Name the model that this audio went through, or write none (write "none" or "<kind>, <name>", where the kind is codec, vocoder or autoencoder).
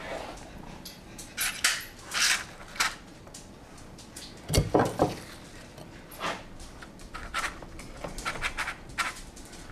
none